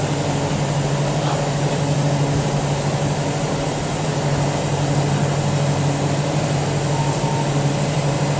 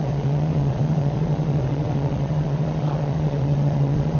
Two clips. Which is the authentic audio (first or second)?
first